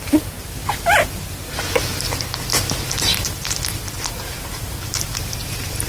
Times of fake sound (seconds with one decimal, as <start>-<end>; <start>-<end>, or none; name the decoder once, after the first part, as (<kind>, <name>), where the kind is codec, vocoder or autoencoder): 3.1-5.9 (vocoder, BigVGAN v2)